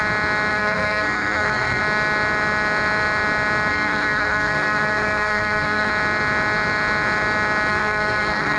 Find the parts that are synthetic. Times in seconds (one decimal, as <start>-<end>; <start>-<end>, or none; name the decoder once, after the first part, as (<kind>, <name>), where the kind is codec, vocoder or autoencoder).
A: 0.5-1.8 (codec, SNAC); 3.7-5.9; 7.7-8.6